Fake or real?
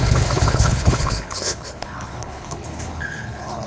fake